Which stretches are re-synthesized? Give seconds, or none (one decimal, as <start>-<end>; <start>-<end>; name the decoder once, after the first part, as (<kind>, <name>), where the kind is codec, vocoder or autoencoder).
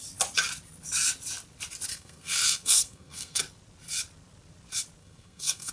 1.9-3.4 (codec, SNAC); 5.0-5.7